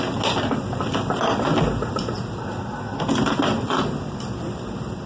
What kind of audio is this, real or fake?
real